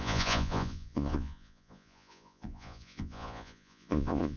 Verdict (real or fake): fake